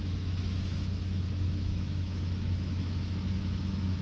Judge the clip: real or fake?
fake